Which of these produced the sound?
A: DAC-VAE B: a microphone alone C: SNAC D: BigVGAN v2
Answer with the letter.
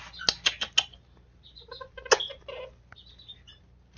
B